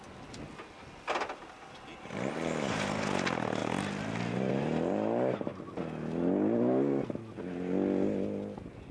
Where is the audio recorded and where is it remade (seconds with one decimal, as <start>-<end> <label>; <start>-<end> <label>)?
0.0-8.9 recorded